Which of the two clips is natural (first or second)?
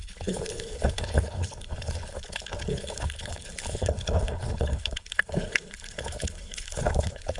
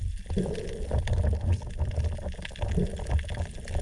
second